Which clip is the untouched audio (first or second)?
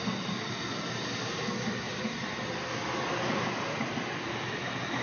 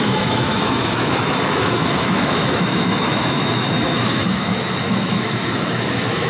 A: first